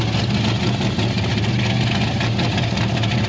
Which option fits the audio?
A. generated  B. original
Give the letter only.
B